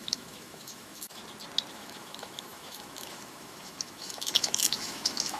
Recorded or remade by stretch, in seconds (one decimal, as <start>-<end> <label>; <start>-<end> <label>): 0.0-1.2 remade; 1.2-1.7 recorded; 1.7-5.4 remade